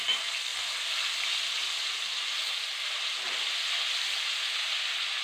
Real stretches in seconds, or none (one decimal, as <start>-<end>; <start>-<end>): 0.0-5.2

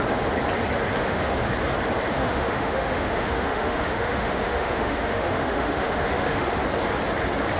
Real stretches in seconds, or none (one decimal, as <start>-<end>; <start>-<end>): 0.0-1.0; 1.5-2.1; 6.6-7.6

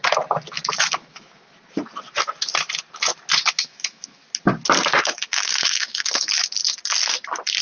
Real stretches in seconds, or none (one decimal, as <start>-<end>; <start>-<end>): 0.0-0.7; 1.5-3.5; 4.2-5.0; 6.6-7.6

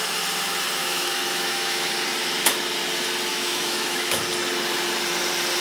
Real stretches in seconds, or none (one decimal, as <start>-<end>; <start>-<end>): 0.0-0.8; 1.9-3.3; 4.2-5.6

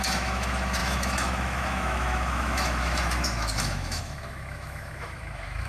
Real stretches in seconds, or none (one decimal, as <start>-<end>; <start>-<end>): none